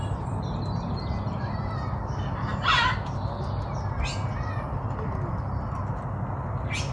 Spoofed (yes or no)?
no